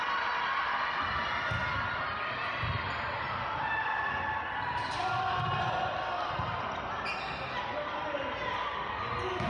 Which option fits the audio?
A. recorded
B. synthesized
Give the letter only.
A